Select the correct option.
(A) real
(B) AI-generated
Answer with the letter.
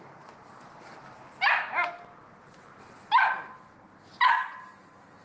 A